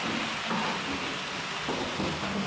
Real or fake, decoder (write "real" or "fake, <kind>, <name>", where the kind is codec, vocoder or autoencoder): real